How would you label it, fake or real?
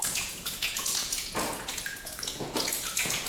fake